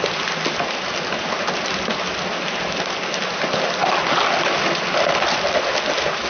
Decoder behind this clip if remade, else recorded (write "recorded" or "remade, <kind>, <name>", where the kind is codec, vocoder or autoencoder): recorded